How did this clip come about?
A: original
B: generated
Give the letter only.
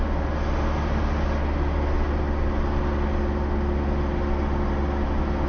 A